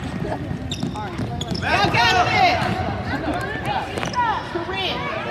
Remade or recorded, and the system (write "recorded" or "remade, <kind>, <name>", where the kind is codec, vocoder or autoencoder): recorded